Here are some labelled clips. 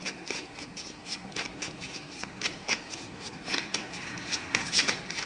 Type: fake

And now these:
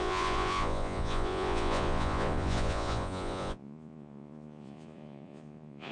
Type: fake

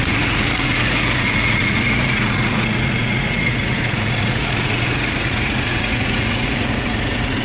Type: fake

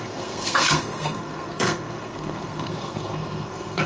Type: fake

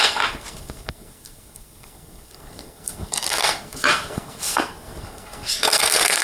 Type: fake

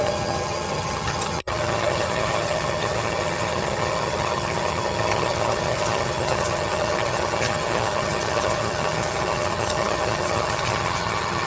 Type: fake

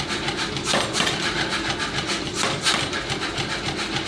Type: real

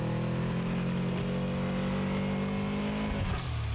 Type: real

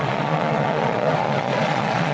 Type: fake